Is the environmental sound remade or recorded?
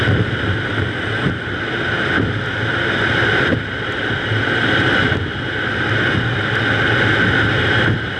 recorded